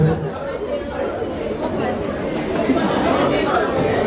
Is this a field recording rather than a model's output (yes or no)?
yes